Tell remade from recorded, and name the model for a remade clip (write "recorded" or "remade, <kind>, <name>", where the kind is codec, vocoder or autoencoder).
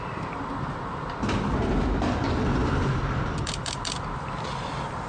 recorded